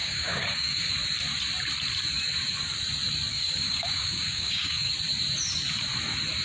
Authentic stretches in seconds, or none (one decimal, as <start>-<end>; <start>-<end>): 0.9-3.3; 4.9-6.4